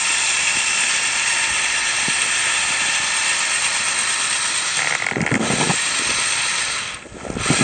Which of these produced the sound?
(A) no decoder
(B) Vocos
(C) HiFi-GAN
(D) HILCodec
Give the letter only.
A